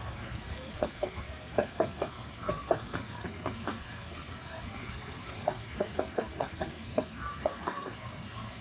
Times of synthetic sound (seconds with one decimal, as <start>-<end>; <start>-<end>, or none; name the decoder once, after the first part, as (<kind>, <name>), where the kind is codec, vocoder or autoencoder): 0.0-8.6 (codec, SNAC)